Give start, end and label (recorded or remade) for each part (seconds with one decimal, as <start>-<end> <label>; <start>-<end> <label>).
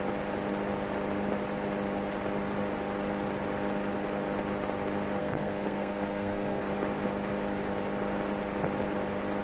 0.0-5.2 recorded; 5.2-6.6 remade; 6.6-9.4 recorded